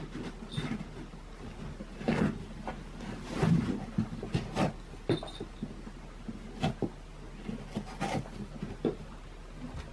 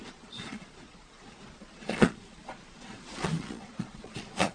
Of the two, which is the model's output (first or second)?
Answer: second